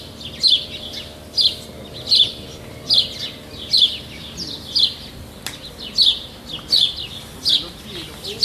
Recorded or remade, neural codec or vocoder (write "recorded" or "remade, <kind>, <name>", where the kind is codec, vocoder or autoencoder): recorded